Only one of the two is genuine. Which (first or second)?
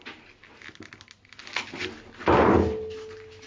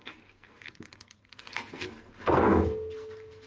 first